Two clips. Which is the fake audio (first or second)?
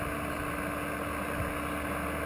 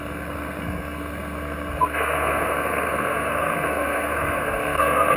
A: second